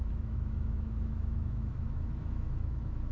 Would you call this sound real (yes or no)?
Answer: no